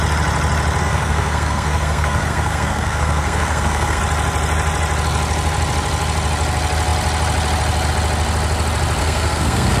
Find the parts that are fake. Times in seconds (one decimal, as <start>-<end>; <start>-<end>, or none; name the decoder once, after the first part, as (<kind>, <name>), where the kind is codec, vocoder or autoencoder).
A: 0.8-4.0 (codec, SNAC); 9.0-9.8